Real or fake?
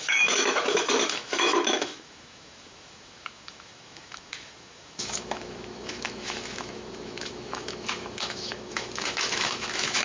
fake